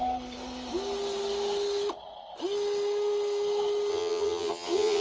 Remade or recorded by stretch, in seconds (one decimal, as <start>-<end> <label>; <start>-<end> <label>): 0.0-3.9 recorded; 3.9-5.0 remade